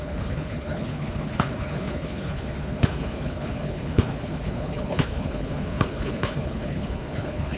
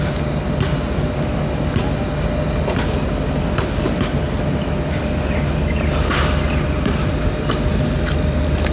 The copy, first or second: first